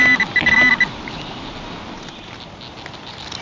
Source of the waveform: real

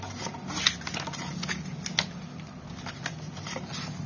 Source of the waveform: real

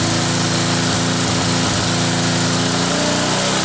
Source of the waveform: real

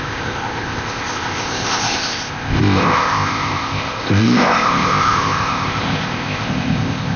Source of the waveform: fake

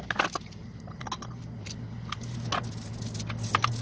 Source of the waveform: real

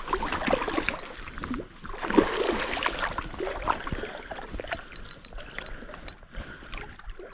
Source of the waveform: real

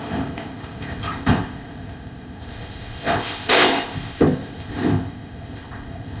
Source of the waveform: fake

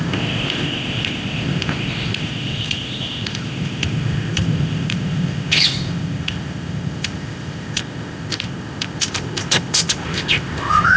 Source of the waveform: fake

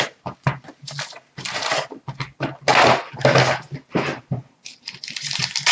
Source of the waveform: real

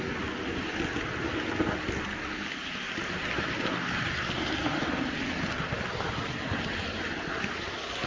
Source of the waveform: real